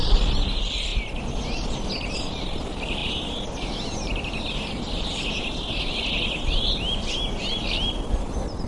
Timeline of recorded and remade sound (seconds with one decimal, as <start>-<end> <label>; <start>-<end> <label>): 0.0-8.7 recorded